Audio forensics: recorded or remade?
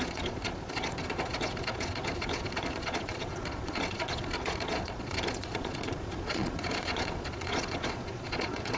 remade